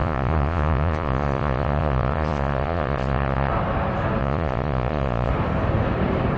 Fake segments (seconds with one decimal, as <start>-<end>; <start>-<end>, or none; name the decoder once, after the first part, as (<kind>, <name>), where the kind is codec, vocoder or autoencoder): 0.0-3.5 (vocoder, Vocos); 4.2-5.3